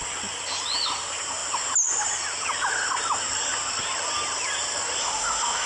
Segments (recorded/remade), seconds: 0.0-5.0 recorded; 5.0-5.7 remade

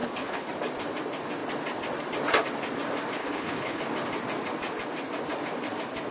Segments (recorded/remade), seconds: 0.0-0.5 remade; 0.5-3.2 recorded; 3.2-3.8 remade; 3.8-6.1 recorded

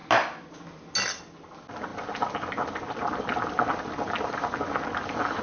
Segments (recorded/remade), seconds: 0.0-5.4 recorded

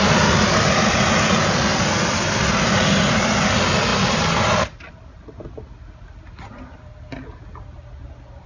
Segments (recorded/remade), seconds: 0.0-8.5 recorded

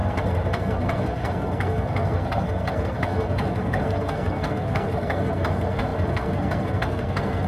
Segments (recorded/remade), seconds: 0.0-7.5 remade

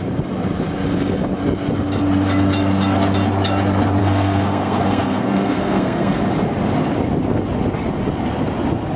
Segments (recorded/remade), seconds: 0.0-4.0 recorded; 4.0-6.2 remade; 6.2-9.0 recorded

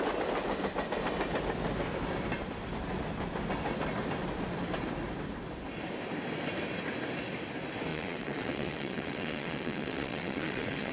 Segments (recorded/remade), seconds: 0.0-7.9 recorded; 7.9-10.9 remade